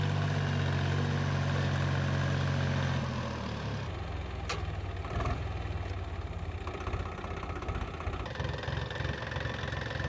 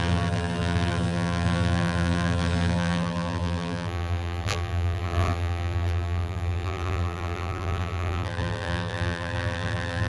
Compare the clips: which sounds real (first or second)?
first